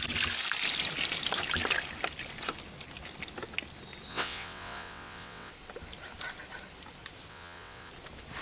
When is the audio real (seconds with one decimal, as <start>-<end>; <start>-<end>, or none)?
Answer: 0.0-4.1; 5.5-7.3; 7.9-8.4